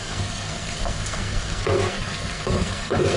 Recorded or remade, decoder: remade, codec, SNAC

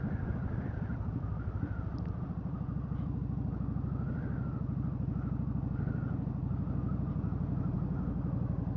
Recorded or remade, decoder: recorded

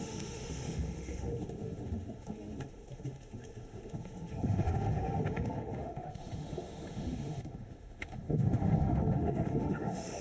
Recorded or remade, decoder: remade, autoencoder, DAC-VAE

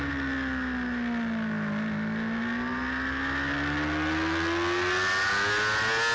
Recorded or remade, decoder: recorded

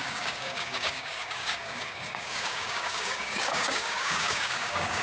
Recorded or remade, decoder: remade, codec, DAC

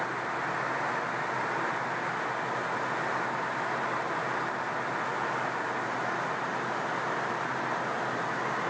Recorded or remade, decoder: recorded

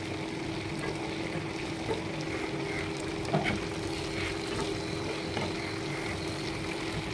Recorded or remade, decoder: recorded